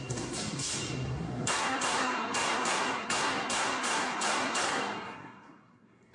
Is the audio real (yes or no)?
no